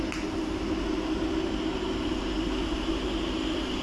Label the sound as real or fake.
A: real